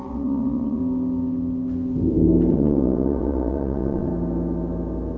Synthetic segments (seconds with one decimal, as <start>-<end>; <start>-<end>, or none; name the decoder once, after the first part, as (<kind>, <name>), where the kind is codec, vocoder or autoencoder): 0.0-0.8 (vocoder, WaveNeXt); 2.5-4.1